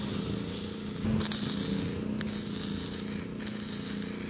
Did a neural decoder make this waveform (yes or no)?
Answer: no